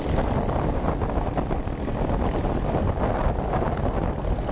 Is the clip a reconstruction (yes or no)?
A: no